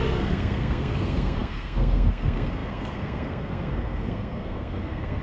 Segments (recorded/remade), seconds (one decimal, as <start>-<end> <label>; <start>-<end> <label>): 0.0-5.2 remade